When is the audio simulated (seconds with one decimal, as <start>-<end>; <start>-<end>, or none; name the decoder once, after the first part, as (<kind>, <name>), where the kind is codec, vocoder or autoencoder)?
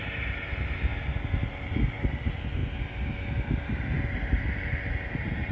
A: 0.0-2.6 (vocoder, BigVGAN v2); 3.6-5.5